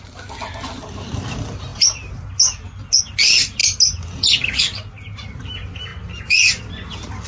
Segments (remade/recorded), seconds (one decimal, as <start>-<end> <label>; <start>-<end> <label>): 0.0-7.3 recorded